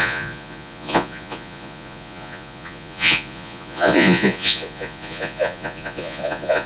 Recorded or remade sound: remade